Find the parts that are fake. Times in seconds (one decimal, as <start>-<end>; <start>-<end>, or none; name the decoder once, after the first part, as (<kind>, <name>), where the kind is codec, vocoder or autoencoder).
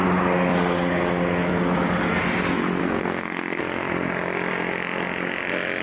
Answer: 2.8-3.6 (codec, SNAC)